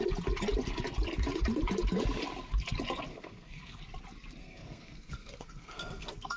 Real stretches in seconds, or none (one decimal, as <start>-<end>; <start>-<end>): 0.0-3.1; 3.8-4.4